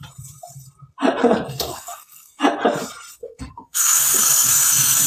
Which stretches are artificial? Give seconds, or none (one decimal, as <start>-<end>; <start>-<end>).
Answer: 1.5-2.4; 3.2-5.1